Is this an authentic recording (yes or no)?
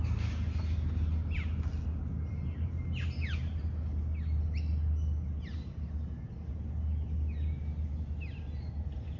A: yes